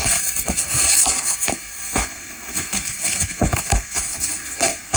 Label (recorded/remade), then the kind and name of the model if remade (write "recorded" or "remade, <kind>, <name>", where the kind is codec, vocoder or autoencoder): remade, codec, SNAC